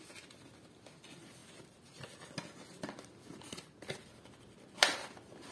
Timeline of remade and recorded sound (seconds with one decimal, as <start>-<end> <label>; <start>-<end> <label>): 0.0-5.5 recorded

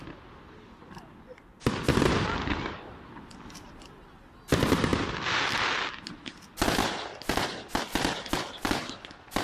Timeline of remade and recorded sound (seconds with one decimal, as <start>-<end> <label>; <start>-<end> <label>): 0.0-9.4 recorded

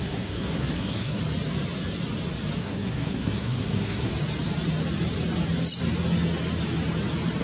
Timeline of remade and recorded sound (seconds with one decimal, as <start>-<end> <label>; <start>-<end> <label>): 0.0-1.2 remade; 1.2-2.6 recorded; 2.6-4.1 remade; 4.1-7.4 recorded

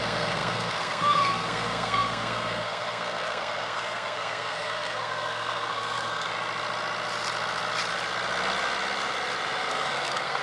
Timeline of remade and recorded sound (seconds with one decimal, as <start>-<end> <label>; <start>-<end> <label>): 0.0-6.3 remade; 6.3-9.7 recorded; 9.7-10.4 remade

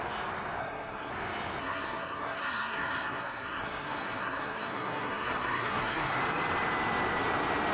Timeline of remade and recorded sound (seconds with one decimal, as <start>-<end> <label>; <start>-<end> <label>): 0.0-0.6 recorded; 0.6-1.1 remade; 1.1-1.6 recorded; 1.6-6.2 remade; 6.2-7.7 recorded

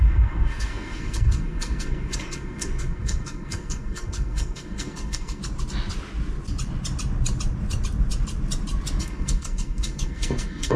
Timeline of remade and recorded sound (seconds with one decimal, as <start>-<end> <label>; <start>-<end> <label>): 0.0-5.4 remade; 5.4-9.0 recorded; 9.0-10.8 remade

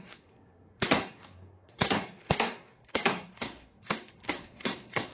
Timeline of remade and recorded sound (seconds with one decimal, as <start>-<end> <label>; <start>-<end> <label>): 0.0-5.1 remade